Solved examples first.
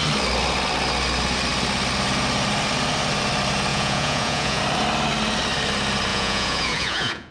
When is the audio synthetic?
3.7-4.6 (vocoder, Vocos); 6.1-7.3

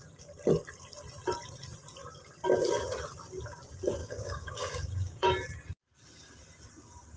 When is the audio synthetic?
4.0-5.3 (codec, DAC)

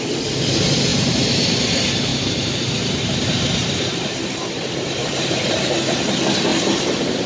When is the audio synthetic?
0.9-1.4 (vocoder, BigVGAN v2); 2.1-5.7; 6.5-7.3